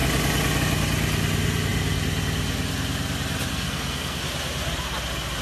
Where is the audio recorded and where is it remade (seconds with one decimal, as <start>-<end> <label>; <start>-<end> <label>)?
0.0-3.5 recorded; 3.5-4.2 remade; 4.2-5.4 recorded